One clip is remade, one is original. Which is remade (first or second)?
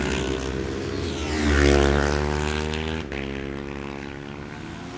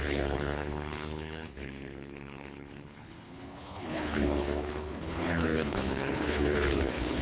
second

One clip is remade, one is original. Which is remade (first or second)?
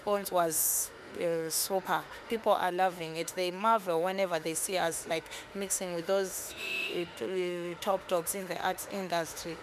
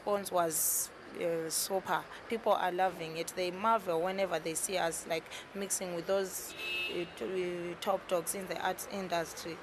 first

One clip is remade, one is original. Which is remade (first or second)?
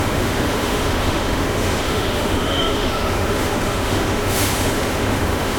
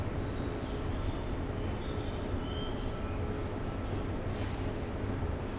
first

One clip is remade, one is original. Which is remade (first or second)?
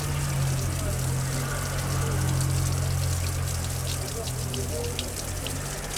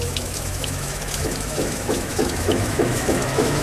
second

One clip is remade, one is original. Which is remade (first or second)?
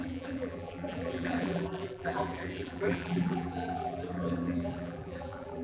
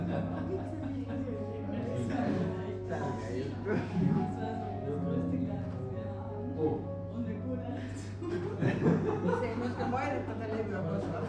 first